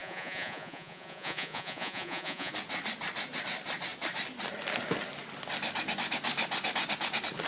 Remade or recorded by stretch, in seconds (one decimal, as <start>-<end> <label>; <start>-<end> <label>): 0.0-2.5 remade; 2.5-7.5 recorded